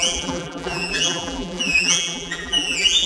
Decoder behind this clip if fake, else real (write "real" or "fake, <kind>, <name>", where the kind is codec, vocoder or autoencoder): fake, vocoder, BigVGAN v2